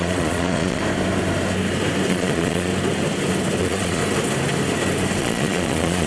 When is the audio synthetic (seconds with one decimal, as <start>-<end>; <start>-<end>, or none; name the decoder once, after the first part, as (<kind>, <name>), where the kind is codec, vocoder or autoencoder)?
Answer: 0.0-0.8 (vocoder, Vocos); 2.1-2.7; 3.6-4.0; 5.2-6.1